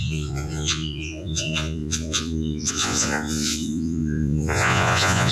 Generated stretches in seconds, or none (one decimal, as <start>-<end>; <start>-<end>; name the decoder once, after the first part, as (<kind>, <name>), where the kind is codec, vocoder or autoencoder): 0.0-5.3 (vocoder, Vocos)